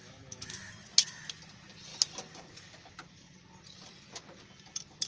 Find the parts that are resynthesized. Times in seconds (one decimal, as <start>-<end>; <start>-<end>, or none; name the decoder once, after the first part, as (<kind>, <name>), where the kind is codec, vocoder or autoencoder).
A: 0.0-0.7 (autoencoder, DAC-VAE)

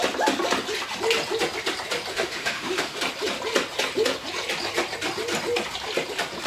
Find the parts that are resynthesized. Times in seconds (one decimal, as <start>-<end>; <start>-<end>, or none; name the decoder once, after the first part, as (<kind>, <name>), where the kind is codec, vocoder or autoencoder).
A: 2.1-3.0 (autoencoder, DAC-VAE)

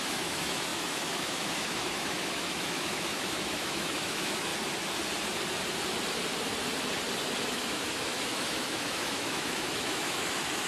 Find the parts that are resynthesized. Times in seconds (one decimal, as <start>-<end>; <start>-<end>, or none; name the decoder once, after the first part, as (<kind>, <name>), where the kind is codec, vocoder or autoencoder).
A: 0.0-4.5 (autoencoder, DAC-VAE); 7.4-10.7

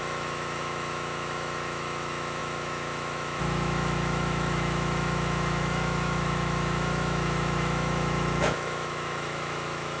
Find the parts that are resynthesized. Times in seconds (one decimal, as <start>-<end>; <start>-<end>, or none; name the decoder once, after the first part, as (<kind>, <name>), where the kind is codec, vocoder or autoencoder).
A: 0.0-10.0 (autoencoder, DAC-VAE)

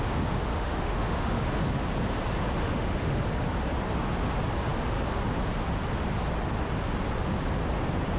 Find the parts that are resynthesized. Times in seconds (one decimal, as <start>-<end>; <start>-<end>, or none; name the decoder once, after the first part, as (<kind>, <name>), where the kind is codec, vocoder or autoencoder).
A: 0.5-1.5 (autoencoder, DAC-VAE); 2.6-3.2

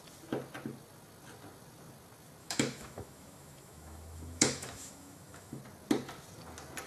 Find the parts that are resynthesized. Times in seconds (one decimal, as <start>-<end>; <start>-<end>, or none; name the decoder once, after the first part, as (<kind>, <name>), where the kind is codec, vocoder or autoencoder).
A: 2.4-5.6 (autoencoder, DAC-VAE)